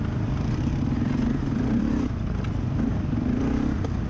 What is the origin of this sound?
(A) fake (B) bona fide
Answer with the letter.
A